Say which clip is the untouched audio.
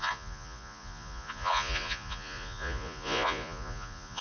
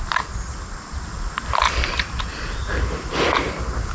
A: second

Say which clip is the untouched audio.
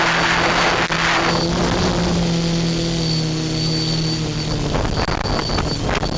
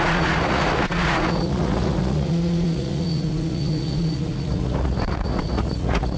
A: first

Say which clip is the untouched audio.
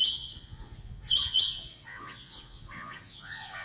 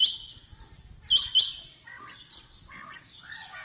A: second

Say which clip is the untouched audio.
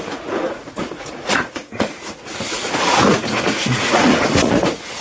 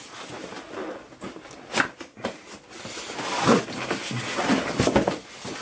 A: second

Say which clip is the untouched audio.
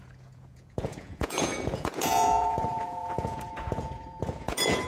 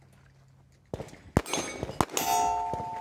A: second